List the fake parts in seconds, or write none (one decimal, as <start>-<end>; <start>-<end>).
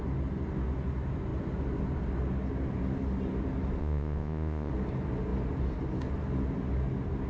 3.8-4.7